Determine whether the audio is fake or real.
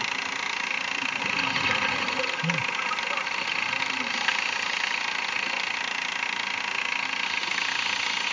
real